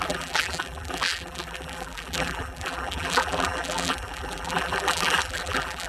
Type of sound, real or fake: fake